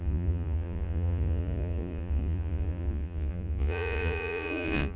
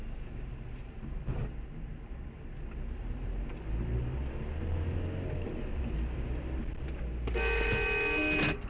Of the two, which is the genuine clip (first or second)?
second